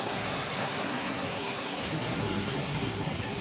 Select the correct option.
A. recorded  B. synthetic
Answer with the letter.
B